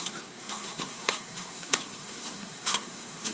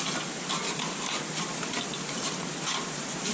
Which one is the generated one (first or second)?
first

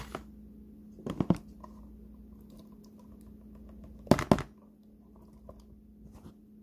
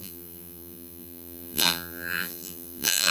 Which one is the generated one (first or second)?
second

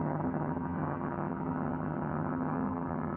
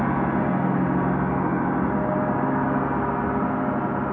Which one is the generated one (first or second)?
first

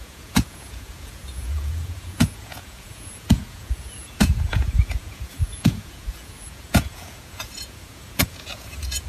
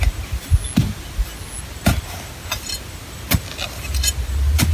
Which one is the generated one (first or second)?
first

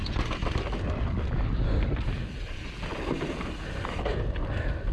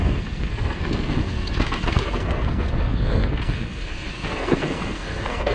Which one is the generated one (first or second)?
second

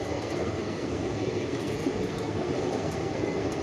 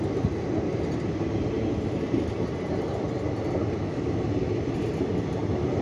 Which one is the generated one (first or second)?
first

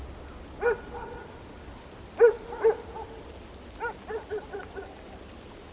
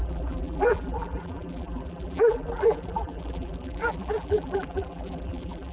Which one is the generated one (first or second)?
second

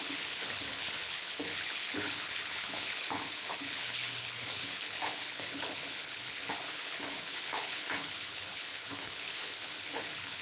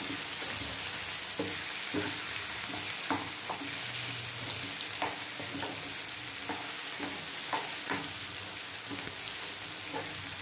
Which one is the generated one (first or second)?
first